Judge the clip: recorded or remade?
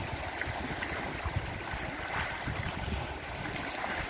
recorded